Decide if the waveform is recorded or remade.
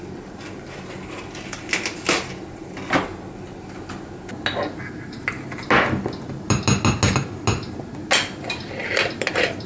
recorded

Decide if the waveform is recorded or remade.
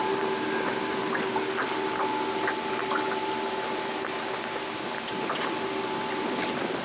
recorded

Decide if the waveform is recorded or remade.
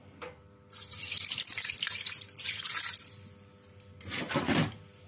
remade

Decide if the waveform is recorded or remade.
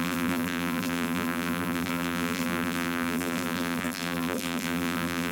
remade